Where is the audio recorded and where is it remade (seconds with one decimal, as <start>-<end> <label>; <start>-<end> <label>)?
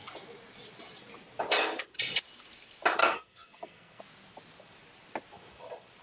0.0-3.0 recorded; 3.0-4.0 remade; 4.0-6.0 recorded